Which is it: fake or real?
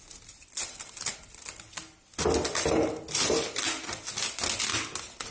real